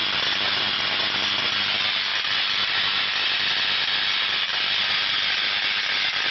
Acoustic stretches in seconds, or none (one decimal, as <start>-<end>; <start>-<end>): 0.0-6.3